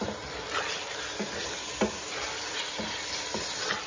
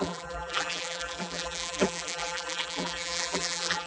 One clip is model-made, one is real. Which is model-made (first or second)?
second